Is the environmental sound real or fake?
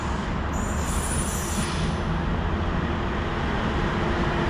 real